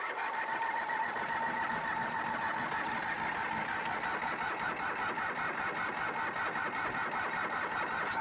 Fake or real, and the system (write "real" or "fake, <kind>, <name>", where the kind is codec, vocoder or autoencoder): real